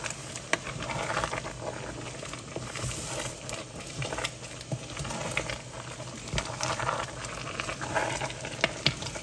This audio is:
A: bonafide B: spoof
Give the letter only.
A